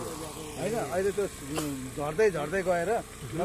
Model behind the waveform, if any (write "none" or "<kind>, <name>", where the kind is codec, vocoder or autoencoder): none